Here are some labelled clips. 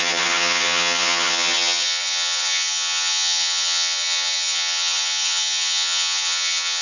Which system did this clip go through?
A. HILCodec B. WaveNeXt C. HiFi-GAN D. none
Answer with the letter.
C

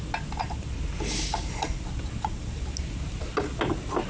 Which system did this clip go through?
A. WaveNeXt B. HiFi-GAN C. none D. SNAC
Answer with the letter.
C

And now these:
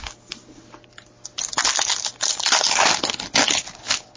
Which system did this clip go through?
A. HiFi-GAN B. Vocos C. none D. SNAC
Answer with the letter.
C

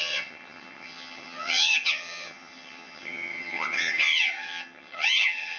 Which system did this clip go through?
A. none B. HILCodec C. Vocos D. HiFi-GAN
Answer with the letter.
D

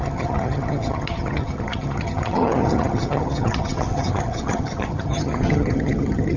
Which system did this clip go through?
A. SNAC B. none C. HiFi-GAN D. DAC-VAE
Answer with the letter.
C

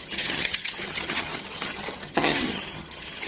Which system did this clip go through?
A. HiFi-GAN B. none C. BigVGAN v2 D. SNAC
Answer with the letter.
A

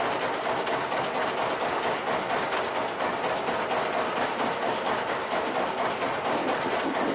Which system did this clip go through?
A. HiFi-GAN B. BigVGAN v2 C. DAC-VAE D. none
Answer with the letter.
D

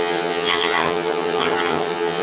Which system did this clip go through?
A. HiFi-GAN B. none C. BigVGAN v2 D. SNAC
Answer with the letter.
A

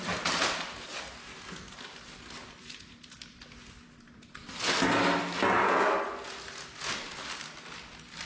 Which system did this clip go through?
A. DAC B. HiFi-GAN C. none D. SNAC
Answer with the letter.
C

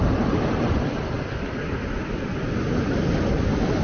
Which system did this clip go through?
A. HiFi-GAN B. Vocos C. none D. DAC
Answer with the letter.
C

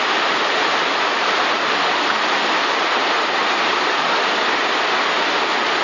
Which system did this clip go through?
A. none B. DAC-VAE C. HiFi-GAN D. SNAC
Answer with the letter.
A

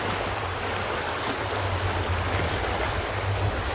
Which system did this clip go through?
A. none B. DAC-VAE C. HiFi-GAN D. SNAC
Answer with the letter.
A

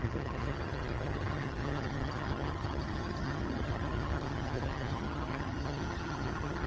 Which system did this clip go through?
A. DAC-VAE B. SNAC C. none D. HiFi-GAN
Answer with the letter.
D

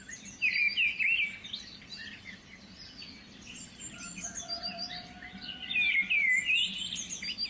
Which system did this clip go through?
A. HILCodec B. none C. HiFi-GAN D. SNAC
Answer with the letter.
B